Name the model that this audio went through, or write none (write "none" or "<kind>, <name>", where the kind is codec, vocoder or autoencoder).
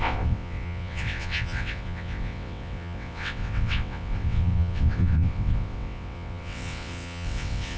vocoder, WaveNeXt